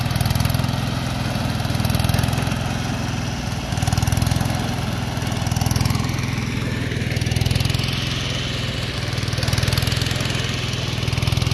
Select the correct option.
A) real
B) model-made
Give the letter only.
A